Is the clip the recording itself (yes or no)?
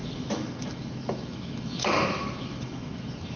no